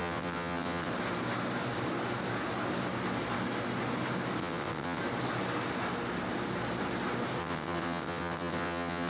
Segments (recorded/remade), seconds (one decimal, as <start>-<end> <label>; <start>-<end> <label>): 0.0-0.9 remade; 0.9-4.4 recorded; 4.4-5.0 remade; 5.0-7.4 recorded; 7.4-9.1 remade